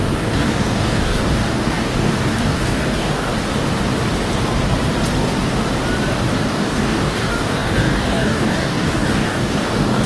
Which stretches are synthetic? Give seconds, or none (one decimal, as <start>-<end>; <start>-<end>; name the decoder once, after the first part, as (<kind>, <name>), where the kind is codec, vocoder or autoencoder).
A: 0.0-3.3 (codec, DAC); 6.4-10.1